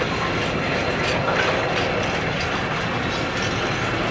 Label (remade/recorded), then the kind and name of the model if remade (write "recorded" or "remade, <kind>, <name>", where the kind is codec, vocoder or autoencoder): recorded